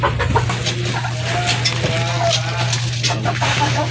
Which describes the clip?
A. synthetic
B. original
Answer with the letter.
B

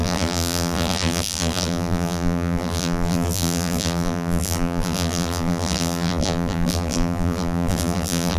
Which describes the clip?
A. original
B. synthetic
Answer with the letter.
B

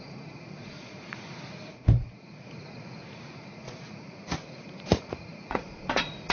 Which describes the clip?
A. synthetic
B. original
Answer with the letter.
A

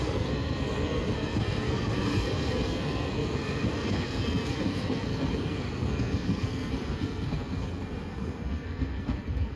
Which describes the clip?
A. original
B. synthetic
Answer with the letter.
B